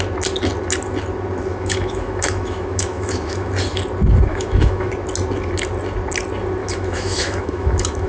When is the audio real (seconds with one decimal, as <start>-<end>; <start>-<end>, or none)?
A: 0.0-1.5; 3.5-4.3; 4.9-6.6